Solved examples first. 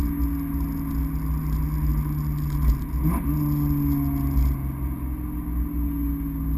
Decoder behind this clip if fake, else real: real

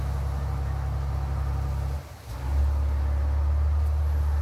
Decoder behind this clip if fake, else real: real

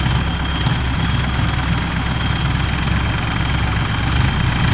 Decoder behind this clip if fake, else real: real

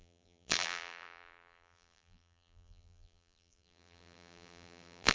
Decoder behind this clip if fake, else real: fake, vocoder, BigVGAN v2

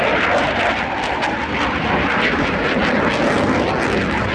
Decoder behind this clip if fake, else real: real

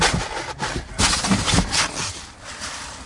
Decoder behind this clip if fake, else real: real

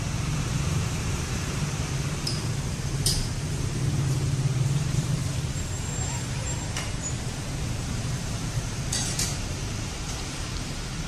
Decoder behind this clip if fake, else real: fake, vocoder, BigVGAN v2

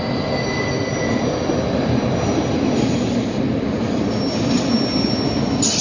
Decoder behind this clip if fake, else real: real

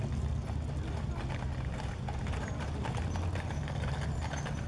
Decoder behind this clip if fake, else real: real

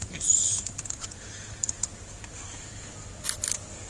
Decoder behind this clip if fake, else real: fake, vocoder, BigVGAN v2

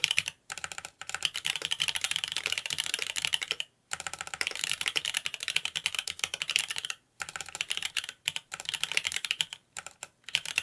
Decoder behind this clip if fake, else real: fake, vocoder, BigVGAN v2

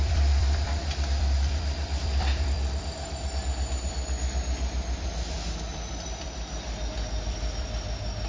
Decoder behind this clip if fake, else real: fake, vocoder, BigVGAN v2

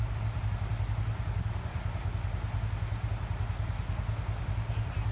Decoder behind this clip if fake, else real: real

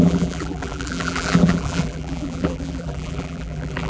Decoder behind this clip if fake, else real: fake, vocoder, BigVGAN v2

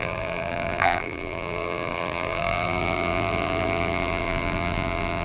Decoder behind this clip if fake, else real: fake, vocoder, BigVGAN v2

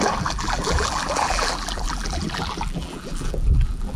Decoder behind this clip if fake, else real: fake, vocoder, BigVGAN v2